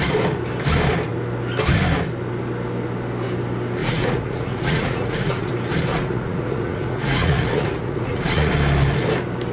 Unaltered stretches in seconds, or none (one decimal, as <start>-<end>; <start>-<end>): 0.0-3.8; 5.5-5.9; 8.5-9.5